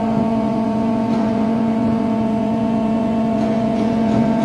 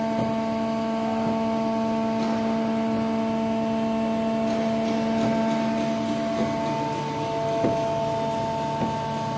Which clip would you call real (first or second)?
second